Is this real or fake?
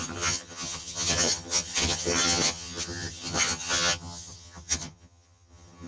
fake